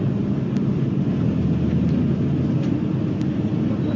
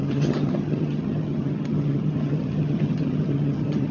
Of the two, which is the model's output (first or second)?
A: second